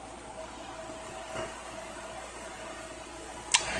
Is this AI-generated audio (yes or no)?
no